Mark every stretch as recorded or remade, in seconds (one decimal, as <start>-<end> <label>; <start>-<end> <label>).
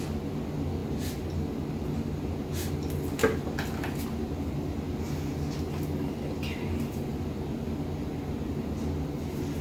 0.0-9.6 recorded